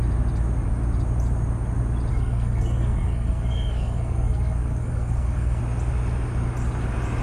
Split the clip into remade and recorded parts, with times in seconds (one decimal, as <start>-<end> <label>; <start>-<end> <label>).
0.0-2.1 recorded; 2.1-5.6 remade; 5.6-7.2 recorded